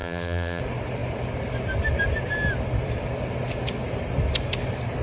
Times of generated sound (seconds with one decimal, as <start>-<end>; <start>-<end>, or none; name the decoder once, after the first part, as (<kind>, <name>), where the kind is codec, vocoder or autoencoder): 0.0-0.6 (vocoder, BigVGAN v2)